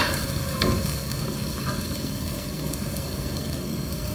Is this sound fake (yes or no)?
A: yes